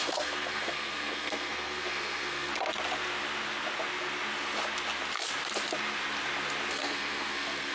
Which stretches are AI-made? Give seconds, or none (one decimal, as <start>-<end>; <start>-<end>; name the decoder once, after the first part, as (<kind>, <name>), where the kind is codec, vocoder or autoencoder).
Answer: 0.0-2.5 (codec, SNAC); 6.7-7.7

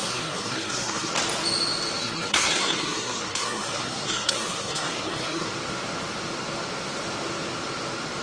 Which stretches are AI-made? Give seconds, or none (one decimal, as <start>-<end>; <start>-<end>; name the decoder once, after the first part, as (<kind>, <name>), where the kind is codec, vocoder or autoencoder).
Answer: 0.0-1.1 (codec, SNAC); 2.0-5.5

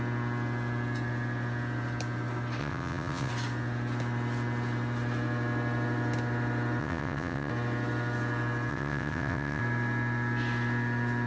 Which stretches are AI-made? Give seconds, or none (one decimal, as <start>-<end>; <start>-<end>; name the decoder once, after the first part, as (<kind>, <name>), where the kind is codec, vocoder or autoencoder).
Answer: 2.6-3.3 (vocoder, WaveNeXt); 6.8-7.5; 8.7-9.6

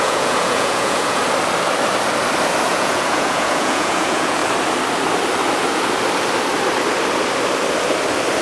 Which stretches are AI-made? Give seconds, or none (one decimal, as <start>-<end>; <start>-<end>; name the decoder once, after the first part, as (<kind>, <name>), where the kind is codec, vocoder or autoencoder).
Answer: 0.0-1.2 (vocoder, Vocos); 2.7-4.4